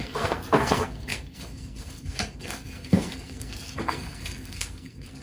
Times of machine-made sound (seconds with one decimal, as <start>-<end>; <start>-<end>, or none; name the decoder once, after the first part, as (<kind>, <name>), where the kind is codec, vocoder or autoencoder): 0.0-5.2 (codec, SNAC)